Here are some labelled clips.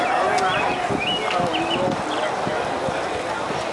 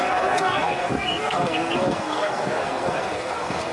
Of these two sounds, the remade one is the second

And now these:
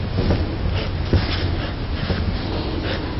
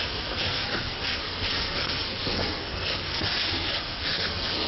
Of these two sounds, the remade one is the second